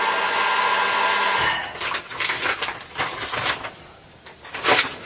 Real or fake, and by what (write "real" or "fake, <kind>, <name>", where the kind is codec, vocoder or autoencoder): real